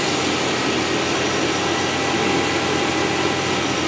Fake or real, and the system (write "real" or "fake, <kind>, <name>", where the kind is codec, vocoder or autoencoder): real